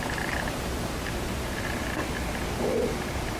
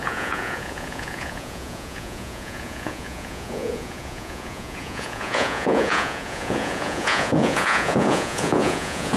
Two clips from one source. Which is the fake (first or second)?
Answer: second